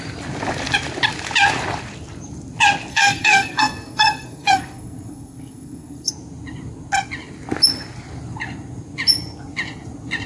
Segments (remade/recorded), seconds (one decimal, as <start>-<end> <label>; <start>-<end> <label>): 0.0-2.9 recorded; 2.9-6.1 remade; 6.1-10.3 recorded